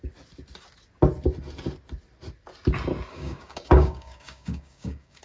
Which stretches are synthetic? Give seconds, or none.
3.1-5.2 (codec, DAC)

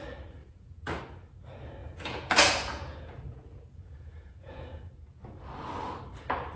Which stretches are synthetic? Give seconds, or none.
0.4-1.0 (vocoder, Vocos); 1.8-4.9

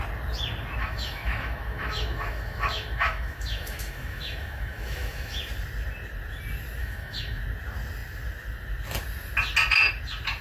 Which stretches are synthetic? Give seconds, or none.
0.8-5.4 (autoencoder, DAC-VAE); 6.8-7.4

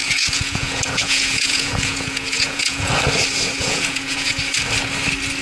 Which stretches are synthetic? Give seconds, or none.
0.0-2.9 (vocoder, Vocos); 3.6-4.4